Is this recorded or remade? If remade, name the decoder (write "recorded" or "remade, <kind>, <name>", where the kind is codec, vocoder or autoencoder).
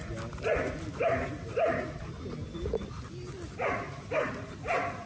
recorded